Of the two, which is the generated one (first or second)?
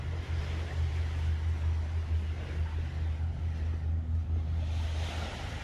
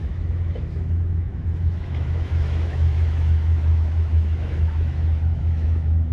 second